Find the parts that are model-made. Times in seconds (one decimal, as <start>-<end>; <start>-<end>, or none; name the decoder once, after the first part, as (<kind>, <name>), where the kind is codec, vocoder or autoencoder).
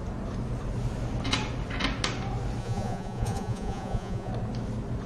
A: 2.6-4.3 (vocoder, Vocos)